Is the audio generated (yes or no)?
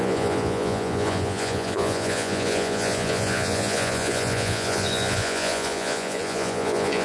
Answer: yes